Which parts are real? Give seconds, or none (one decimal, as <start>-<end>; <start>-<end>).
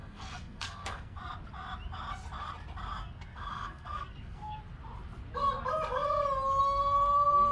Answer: 1.2-3.0; 4.6-7.5